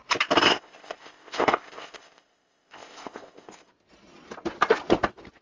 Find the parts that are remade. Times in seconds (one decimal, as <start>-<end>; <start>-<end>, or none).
0.5-3.7